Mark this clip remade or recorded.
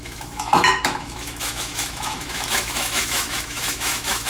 remade